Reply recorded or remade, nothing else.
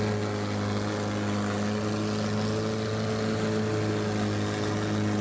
recorded